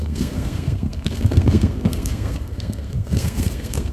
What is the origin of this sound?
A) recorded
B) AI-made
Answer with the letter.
B